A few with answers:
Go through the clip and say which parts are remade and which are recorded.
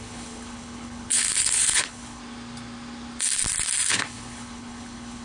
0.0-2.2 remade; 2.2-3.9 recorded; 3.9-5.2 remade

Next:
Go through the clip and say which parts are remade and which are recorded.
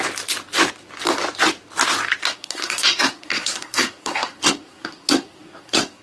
0.0-2.2 recorded; 2.2-6.0 remade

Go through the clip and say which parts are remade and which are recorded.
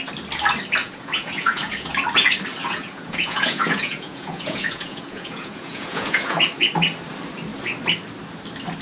0.0-0.8 recorded; 0.8-1.9 remade; 1.9-2.6 recorded; 2.6-6.4 remade; 6.4-8.8 recorded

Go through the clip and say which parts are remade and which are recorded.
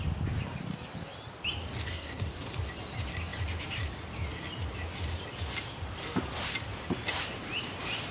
0.0-1.9 recorded; 1.9-2.5 remade; 2.5-8.1 recorded